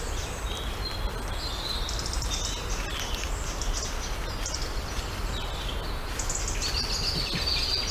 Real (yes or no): yes